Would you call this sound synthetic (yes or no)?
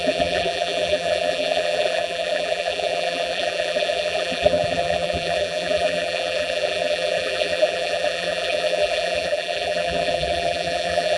yes